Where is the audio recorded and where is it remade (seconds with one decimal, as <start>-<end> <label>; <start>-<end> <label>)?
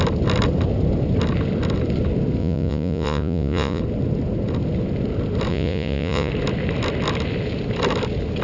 0.0-2.4 recorded; 2.4-3.8 remade; 3.8-5.5 recorded; 5.5-6.3 remade; 6.3-8.4 recorded